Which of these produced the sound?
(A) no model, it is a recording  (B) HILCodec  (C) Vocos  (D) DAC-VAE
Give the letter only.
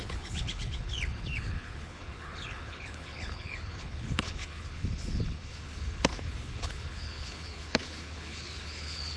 B